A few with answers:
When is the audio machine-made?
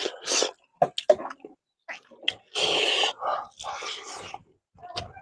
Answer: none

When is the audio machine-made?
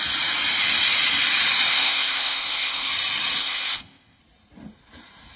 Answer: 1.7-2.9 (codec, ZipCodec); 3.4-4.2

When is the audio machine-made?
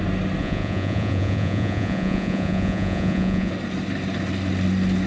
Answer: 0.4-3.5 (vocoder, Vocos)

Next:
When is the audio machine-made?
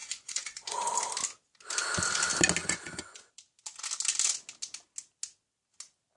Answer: 0.0-0.8 (vocoder, Vocos); 2.6-3.3